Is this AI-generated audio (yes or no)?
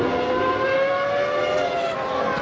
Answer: no